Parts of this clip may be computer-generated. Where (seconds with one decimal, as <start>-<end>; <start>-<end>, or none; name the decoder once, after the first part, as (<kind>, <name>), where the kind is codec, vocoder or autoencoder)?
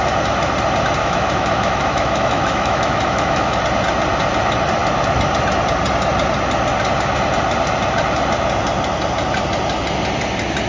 1.0-3.6 (autoencoder, DAC-VAE)